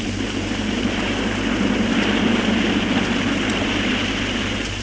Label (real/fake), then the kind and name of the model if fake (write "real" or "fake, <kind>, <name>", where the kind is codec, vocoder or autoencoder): real